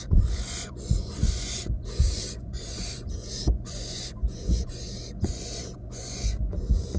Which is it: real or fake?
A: fake